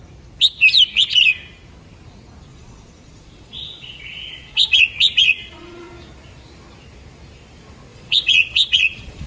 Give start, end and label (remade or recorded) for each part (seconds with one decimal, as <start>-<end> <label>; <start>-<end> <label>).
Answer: 0.0-2.5 recorded; 2.5-4.8 remade; 4.8-5.2 recorded; 5.2-5.9 remade; 5.9-7.9 recorded; 7.9-9.3 remade

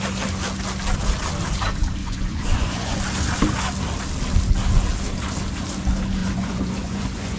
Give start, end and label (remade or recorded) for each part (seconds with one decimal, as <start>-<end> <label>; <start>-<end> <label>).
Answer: 0.0-2.0 recorded; 2.0-3.0 remade; 3.0-6.2 recorded; 6.2-7.4 remade

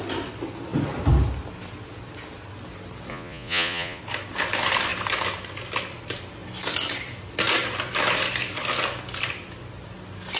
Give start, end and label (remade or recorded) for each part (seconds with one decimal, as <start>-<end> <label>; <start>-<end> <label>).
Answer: 0.0-3.1 recorded; 3.1-4.0 remade; 4.0-10.4 recorded

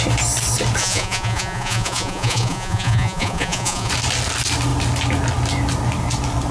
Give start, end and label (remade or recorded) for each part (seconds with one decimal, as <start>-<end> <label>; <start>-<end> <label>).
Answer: 0.0-0.8 recorded; 0.8-3.9 remade; 3.9-6.5 recorded